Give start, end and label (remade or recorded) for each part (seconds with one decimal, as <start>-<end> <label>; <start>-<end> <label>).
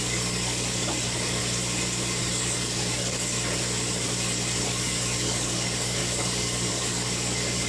0.0-1.4 remade; 1.4-2.2 recorded; 2.2-3.1 remade; 3.1-4.6 recorded; 4.6-7.7 remade